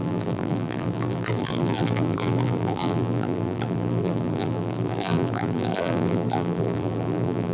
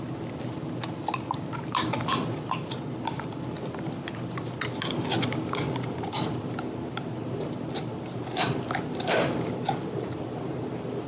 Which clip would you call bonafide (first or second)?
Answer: second